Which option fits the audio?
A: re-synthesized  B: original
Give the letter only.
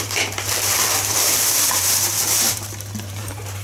A